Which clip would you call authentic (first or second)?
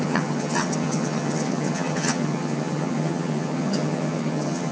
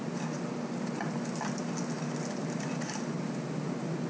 second